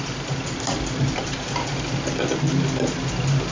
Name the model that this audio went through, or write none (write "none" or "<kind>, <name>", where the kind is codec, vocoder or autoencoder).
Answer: none